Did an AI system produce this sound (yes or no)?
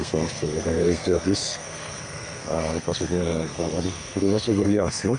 yes